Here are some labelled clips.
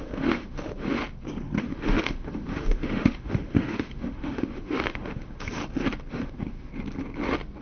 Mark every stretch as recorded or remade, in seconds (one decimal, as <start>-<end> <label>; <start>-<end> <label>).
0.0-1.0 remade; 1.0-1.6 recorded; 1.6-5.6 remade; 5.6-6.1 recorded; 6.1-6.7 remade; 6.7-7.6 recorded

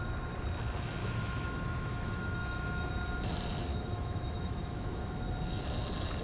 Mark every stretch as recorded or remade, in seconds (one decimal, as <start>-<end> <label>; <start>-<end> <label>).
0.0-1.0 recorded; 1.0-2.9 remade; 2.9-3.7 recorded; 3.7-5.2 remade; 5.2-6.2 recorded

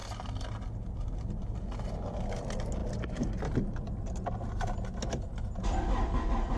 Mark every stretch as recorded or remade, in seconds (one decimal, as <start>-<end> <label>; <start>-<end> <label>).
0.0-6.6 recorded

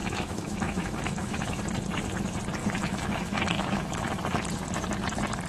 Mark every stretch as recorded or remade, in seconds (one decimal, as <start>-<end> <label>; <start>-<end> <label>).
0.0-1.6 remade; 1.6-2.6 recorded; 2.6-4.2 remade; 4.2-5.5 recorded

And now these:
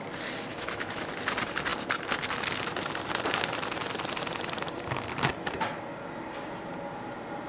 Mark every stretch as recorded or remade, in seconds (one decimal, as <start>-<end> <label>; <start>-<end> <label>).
0.0-0.5 recorded; 0.5-1.1 remade; 1.1-7.5 recorded

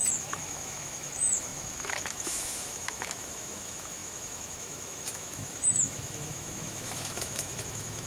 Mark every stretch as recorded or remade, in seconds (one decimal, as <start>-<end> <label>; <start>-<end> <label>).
0.0-8.1 remade

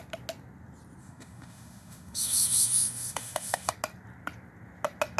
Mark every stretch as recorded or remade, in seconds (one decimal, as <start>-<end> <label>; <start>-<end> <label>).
0.0-1.0 recorded; 1.0-3.7 remade; 3.7-5.2 recorded